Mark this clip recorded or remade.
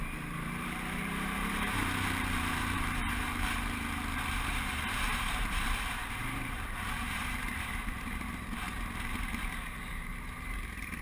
remade